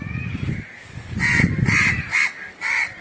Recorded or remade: recorded